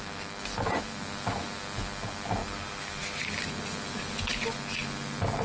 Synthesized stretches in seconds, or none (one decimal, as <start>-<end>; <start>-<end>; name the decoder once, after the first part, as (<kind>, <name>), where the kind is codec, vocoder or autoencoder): none